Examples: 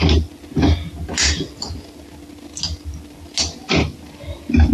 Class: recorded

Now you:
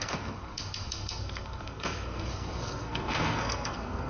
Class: remade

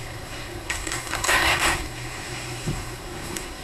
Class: remade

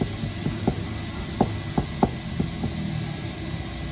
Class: recorded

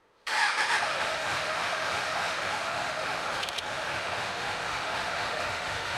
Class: remade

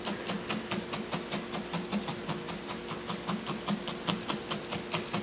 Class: recorded